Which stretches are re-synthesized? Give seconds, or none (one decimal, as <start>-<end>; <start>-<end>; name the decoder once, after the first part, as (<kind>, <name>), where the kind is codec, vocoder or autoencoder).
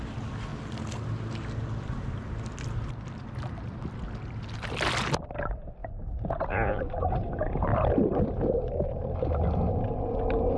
none